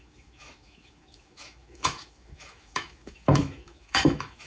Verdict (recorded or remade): remade